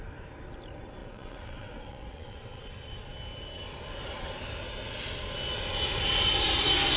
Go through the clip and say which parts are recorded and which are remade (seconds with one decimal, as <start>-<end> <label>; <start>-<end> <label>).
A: 0.0-1.0 recorded; 1.0-2.6 remade; 2.6-7.0 recorded